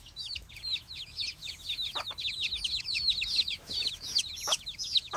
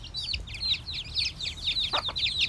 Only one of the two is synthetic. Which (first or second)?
first